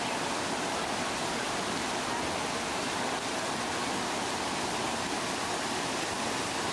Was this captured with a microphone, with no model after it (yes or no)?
yes